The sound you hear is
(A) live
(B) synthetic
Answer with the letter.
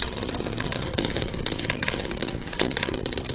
B